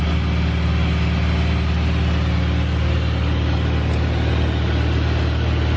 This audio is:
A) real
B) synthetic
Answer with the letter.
A